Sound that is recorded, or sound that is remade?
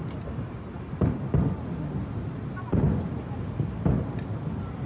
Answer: recorded